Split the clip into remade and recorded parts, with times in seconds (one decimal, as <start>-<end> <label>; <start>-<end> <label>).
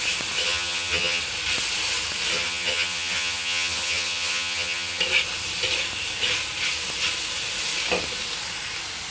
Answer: 0.0-0.4 recorded; 0.4-1.2 remade; 1.2-2.3 recorded; 2.3-5.0 remade; 5.0-9.1 recorded